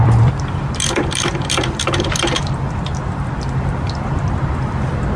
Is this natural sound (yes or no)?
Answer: no